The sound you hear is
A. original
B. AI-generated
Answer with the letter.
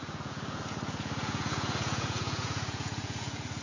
B